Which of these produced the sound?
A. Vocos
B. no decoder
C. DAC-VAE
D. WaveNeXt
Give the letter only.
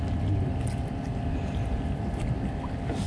B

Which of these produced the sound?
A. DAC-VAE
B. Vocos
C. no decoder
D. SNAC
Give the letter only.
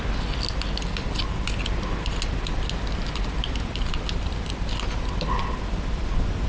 C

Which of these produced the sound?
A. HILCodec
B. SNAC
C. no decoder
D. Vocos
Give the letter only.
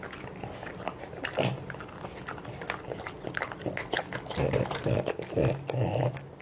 C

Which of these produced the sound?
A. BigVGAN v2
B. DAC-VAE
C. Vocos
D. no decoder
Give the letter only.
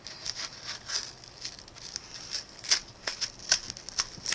D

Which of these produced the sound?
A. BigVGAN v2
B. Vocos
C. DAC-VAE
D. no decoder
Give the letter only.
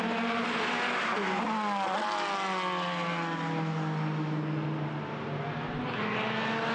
D